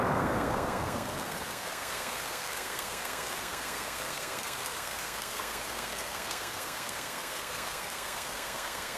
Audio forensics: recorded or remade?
remade